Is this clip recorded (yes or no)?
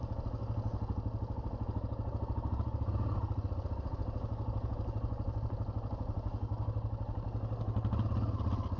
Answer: yes